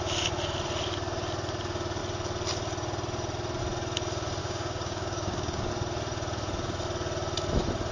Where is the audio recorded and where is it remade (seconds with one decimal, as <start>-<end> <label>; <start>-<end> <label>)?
0.0-4.4 recorded; 4.4-5.7 remade; 5.7-7.9 recorded